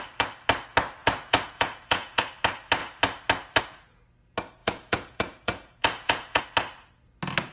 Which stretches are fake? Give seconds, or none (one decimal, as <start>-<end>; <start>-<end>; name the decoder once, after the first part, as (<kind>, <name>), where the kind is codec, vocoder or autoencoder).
1.0-2.2 (vocoder, Vocos); 4.6-6.4